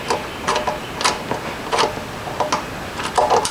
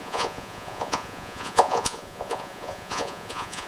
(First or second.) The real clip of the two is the first